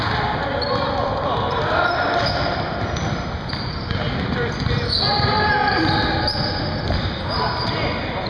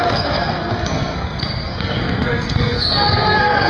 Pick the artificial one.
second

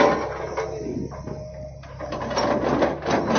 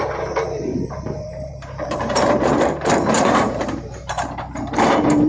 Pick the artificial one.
second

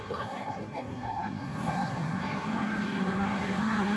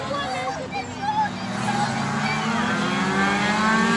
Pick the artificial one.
first